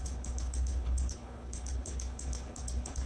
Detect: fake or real fake